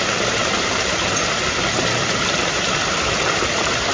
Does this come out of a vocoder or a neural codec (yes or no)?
yes